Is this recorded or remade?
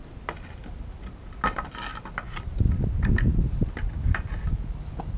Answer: recorded